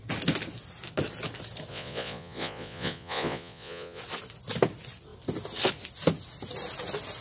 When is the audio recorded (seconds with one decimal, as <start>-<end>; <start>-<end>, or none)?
0.0-1.7; 4.0-7.2